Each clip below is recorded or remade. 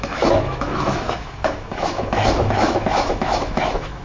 remade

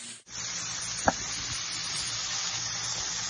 recorded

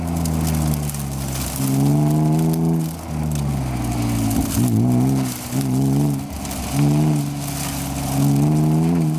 recorded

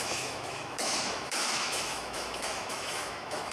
remade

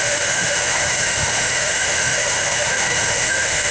remade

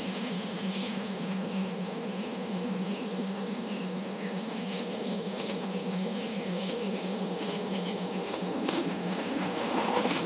remade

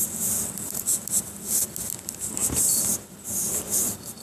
recorded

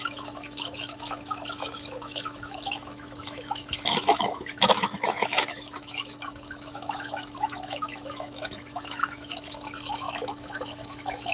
remade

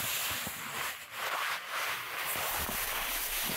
recorded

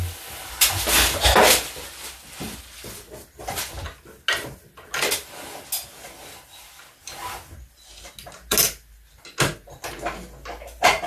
recorded